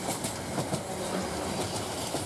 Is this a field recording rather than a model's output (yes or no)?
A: yes